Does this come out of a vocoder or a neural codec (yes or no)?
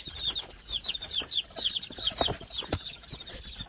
no